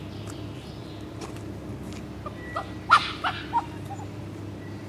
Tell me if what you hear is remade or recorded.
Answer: recorded